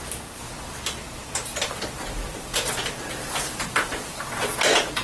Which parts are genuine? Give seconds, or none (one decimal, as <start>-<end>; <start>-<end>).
0.0-1.5; 4.5-5.0